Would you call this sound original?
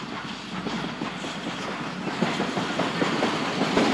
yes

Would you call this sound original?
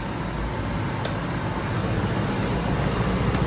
yes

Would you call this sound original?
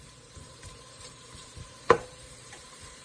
no